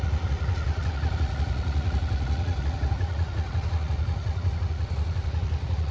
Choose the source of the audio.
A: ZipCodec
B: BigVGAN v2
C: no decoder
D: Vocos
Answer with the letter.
D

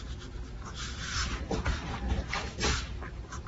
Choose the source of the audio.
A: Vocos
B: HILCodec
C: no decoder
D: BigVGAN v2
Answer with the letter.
C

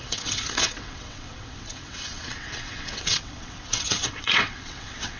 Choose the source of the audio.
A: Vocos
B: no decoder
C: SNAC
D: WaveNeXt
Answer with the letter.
D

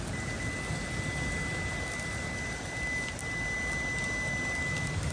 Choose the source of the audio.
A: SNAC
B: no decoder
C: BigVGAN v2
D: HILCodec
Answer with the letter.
B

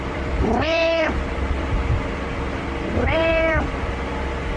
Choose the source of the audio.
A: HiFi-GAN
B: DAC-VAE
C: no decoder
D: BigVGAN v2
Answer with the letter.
D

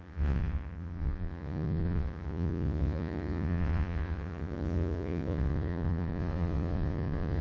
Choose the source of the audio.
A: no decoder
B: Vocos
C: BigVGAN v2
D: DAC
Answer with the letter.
B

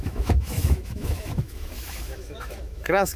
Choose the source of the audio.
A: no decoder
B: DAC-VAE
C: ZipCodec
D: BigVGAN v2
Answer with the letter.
B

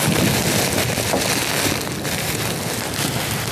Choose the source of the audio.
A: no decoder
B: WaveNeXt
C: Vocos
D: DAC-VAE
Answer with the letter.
A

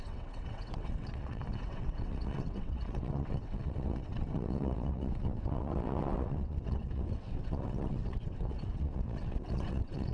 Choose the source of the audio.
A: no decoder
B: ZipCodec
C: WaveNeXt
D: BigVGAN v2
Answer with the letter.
C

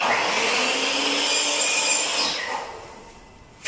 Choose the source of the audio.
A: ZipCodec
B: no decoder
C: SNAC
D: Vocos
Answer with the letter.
B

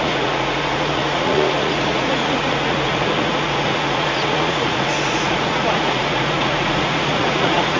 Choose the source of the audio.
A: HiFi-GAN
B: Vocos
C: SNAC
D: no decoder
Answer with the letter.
B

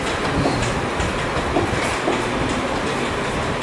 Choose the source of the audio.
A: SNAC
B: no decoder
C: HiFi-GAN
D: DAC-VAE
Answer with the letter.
B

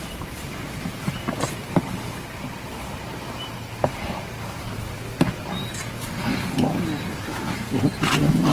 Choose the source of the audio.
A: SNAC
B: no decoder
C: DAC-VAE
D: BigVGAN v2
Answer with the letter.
B